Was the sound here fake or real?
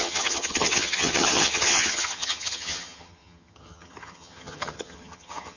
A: fake